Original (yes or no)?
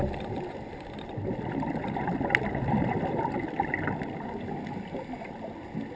yes